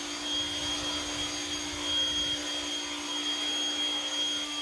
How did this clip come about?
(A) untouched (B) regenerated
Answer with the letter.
A